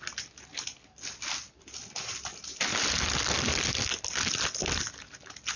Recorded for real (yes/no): yes